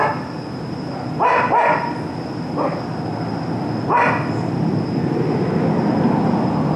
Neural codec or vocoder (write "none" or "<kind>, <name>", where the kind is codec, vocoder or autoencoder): none